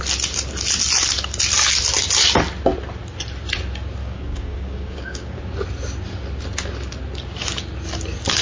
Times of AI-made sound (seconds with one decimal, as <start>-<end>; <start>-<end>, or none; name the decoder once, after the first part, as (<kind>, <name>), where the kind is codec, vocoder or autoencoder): 4.0-5.4 (codec, DAC)